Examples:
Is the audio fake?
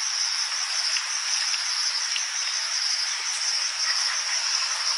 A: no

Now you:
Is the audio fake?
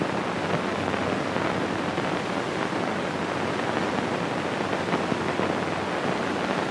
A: no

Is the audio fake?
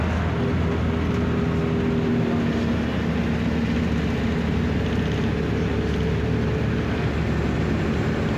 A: no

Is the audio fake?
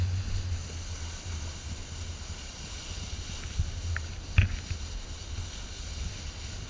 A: no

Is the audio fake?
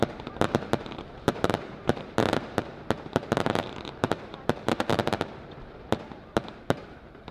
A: yes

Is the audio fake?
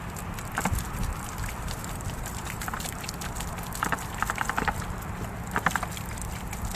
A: no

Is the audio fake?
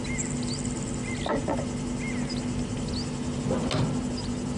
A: no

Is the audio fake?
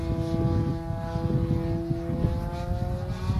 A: no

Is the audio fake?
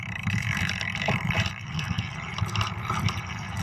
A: yes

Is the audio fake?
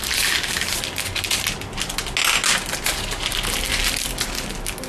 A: no